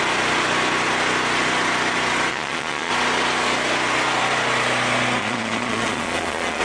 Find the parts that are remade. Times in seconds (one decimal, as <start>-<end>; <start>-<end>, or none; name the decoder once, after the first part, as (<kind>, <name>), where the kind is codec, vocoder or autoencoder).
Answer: 2.3-2.9 (vocoder, Vocos); 5.2-6.6